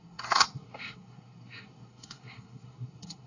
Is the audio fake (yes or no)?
yes